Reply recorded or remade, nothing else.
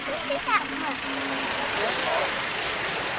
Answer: recorded